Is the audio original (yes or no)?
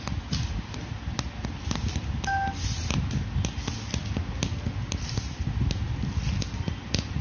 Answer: yes